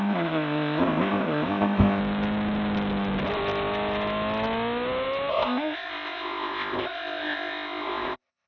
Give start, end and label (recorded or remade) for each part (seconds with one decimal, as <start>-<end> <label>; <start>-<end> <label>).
0.0-2.0 remade; 2.0-5.3 recorded; 5.3-8.5 remade